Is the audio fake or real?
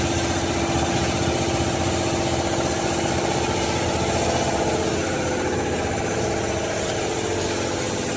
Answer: real